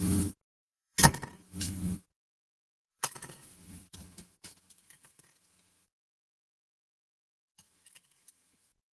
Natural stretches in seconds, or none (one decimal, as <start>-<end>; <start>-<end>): none